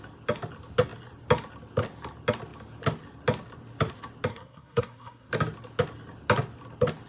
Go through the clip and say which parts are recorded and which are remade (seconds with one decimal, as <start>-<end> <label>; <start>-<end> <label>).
0.0-4.3 recorded; 4.3-5.3 remade; 5.3-7.1 recorded